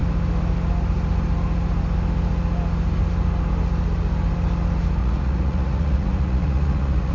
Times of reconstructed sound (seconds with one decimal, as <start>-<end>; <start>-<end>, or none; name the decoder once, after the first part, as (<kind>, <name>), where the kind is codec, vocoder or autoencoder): 5.0-7.1 (vocoder, Vocos)